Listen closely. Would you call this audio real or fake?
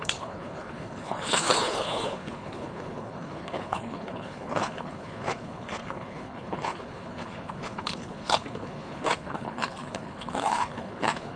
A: fake